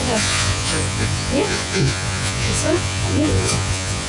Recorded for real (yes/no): no